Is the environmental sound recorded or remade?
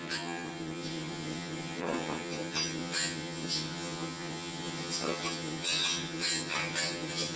remade